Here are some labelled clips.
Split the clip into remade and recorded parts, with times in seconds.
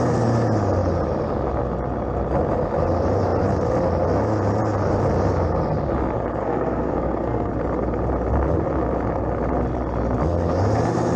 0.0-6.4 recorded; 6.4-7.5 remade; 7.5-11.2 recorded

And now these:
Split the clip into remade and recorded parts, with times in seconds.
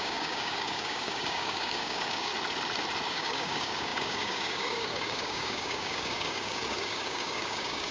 0.0-2.3 remade; 2.3-3.1 recorded; 3.1-7.9 remade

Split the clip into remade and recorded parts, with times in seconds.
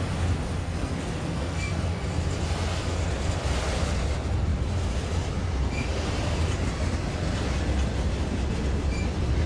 0.0-0.6 recorded; 0.6-1.8 remade; 1.8-9.5 recorded